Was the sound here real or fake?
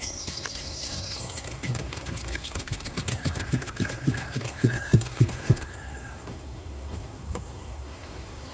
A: fake